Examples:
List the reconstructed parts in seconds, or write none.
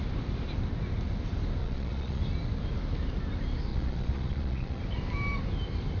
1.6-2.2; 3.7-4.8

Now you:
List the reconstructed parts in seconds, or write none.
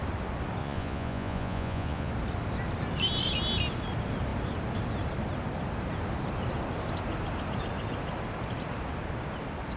0.6-2.1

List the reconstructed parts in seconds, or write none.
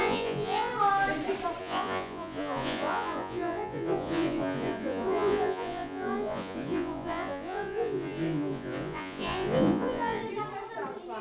0.0-0.7; 1.6-10.2